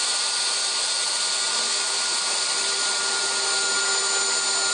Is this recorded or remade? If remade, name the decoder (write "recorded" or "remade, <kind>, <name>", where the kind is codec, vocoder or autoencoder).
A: recorded